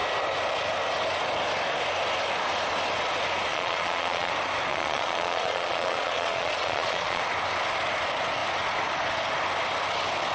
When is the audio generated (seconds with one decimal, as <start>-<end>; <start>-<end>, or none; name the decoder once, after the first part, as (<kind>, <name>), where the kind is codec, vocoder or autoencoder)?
3.5-4.3 (vocoder, Vocos); 4.7-7.2